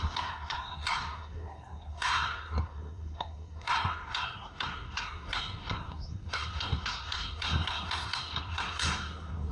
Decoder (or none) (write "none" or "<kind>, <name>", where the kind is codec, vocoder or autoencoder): codec, SNAC